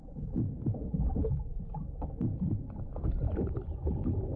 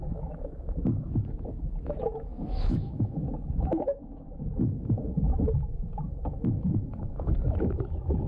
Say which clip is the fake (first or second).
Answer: second